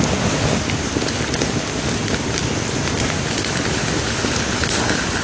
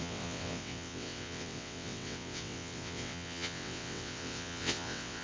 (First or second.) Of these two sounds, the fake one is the second